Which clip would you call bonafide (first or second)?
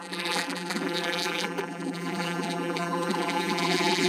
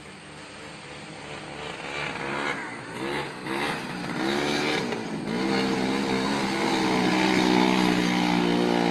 second